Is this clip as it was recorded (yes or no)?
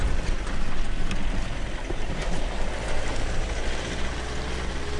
yes